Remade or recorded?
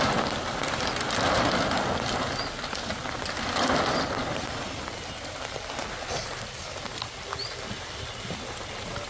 recorded